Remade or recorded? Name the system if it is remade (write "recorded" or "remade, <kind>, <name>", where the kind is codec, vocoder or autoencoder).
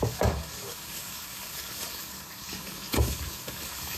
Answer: remade, codec, DAC